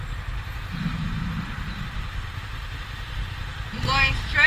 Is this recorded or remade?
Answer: remade